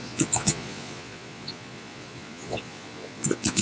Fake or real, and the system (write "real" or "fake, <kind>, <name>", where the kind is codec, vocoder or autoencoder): fake, vocoder, Vocos